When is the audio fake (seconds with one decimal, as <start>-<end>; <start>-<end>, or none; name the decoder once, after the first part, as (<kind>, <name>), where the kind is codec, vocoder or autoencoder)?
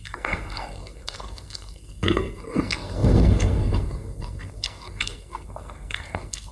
0.0-6.5 (codec, SNAC)